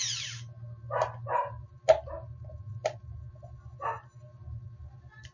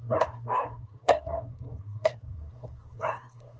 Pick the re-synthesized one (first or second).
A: second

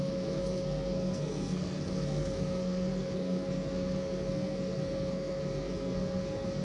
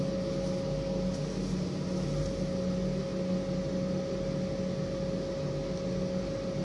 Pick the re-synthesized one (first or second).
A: first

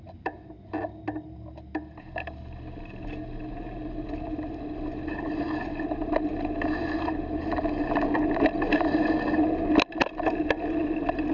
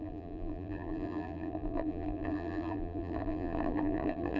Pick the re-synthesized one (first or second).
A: second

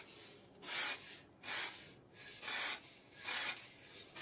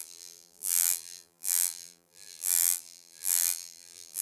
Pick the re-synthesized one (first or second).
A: second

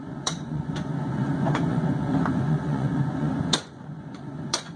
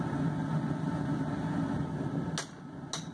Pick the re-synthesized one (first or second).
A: first